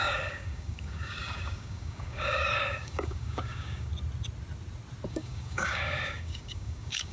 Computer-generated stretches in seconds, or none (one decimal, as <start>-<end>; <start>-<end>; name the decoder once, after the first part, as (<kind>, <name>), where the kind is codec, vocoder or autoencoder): 0.0-3.9 (codec, DAC); 5.1-7.1